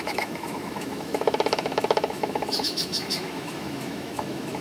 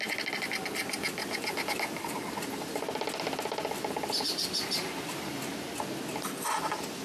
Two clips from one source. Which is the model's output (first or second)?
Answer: first